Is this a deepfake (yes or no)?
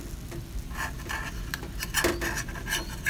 no